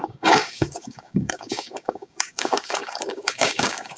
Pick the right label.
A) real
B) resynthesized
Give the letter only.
B